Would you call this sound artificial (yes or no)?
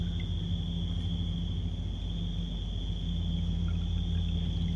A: no